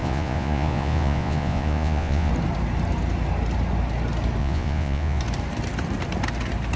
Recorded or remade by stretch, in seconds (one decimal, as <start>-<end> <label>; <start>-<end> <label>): 0.0-2.3 remade; 2.3-4.4 recorded; 4.4-5.2 remade; 5.2-6.8 recorded